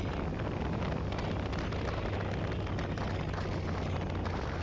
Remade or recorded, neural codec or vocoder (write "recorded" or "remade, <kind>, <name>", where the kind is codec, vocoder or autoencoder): recorded